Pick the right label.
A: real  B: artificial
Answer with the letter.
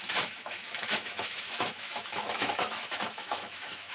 B